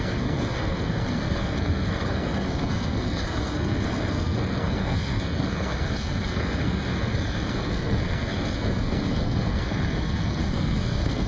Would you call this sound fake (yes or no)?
yes